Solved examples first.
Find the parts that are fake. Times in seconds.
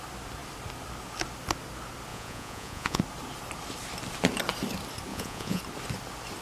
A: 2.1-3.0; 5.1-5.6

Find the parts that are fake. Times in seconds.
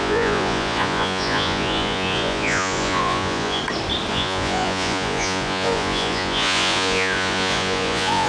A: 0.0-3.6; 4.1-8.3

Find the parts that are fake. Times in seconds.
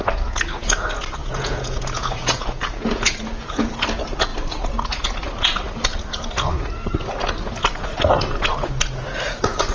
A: 1.2-3.7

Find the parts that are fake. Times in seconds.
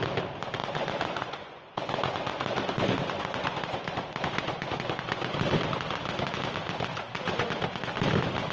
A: 0.6-5.4; 6.9-7.5